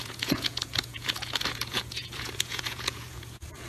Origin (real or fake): fake